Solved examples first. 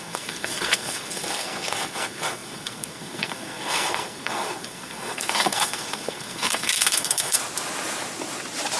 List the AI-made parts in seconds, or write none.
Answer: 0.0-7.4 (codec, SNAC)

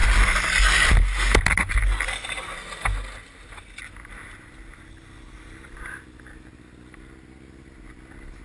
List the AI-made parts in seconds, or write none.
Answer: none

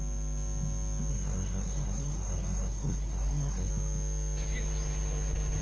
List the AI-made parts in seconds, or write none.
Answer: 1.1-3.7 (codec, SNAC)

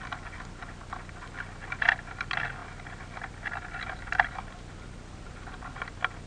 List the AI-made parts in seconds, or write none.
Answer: none

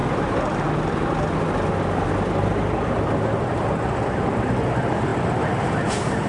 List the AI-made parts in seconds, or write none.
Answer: 2.9-6.3 (vocoder, BigVGAN v2)

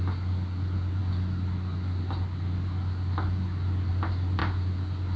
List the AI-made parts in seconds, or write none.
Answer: none

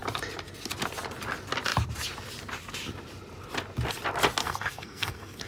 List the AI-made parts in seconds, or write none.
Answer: 4.4-5.5 (codec, SNAC)